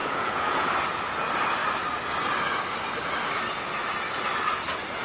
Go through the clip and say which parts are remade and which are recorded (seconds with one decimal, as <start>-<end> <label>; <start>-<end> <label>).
0.0-0.7 remade; 0.7-5.0 recorded